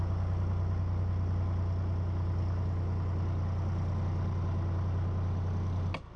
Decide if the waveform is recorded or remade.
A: recorded